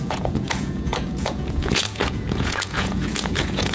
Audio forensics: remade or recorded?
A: remade